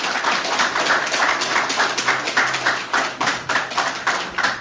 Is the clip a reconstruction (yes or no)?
no